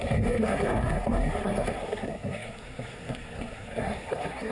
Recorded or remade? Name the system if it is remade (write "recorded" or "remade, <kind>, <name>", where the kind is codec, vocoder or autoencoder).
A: remade, codec, SNAC